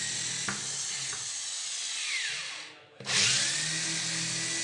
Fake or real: real